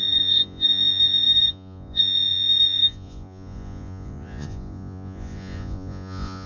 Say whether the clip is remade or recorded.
remade